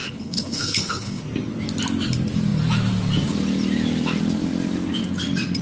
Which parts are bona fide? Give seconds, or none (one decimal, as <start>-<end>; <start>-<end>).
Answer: 1.2-5.6